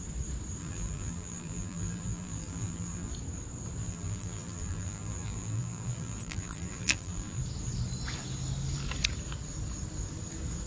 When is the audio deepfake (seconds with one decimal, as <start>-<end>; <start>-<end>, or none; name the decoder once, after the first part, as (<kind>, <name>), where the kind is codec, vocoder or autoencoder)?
0.6-3.1 (vocoder, BigVGAN v2); 3.8-7.4

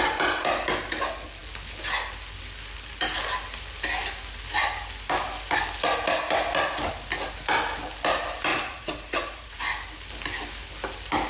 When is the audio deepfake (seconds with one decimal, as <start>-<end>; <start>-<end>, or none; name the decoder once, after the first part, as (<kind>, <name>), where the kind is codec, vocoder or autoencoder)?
8.5-9.6 (vocoder, Vocos)

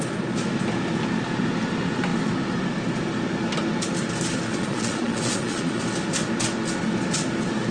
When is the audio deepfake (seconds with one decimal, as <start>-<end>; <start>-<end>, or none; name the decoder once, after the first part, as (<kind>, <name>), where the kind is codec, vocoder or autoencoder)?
4.5-5.8 (vocoder, Vocos)

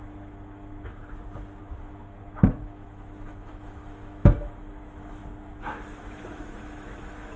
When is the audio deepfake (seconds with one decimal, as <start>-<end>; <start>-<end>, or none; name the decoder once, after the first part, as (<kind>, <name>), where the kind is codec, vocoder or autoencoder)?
0.0-1.0 (autoencoder, DAC-VAE); 1.6-5.2; 6.0-7.4

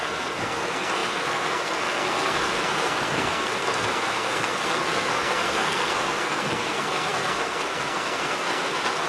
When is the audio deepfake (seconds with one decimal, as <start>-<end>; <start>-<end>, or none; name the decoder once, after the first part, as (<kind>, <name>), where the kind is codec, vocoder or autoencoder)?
0.0-9.1 (codec, SNAC)

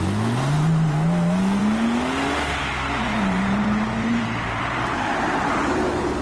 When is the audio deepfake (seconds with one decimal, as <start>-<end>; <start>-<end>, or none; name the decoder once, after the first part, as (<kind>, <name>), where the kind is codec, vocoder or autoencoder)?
3.1-4.6 (vocoder, BigVGAN v2)

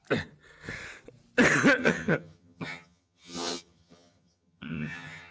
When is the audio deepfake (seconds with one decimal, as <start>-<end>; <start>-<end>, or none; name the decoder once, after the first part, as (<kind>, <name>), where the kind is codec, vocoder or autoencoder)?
1.8-5.3 (vocoder, HiFi-GAN)

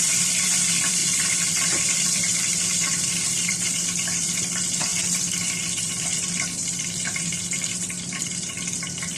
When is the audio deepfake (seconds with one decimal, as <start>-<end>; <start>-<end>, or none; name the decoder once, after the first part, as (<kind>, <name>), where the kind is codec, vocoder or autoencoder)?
0.0-4.9 (vocoder, BigVGAN v2); 5.6-9.2